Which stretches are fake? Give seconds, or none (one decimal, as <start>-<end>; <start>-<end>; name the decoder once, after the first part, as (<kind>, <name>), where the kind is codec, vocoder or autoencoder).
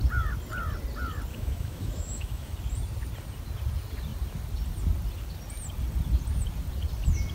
1.3-2.5 (autoencoder, DAC-VAE)